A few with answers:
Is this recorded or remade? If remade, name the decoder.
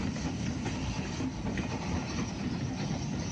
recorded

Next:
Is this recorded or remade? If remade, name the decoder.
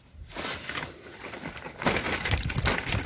recorded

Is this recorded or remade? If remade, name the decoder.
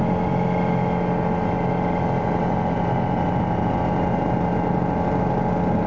recorded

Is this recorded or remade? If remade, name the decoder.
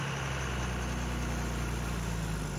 recorded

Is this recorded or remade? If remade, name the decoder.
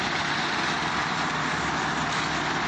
recorded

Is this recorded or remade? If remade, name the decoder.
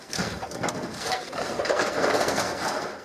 remade, codec, SNAC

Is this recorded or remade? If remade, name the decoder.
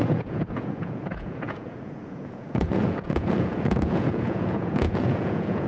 remade, vocoder, Vocos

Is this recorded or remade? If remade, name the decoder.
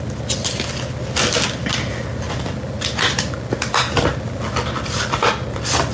recorded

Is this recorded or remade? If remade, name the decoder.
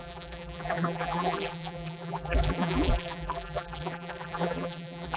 remade, vocoder, BigVGAN v2